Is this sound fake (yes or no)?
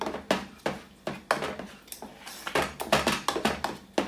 no